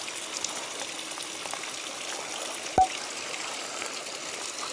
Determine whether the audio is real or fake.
real